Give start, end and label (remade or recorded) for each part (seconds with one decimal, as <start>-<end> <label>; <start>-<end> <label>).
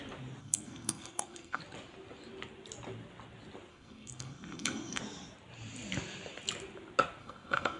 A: 0.0-0.4 recorded; 0.4-1.6 remade; 1.6-3.7 recorded; 3.7-5.0 remade; 5.0-7.2 recorded; 7.2-7.8 remade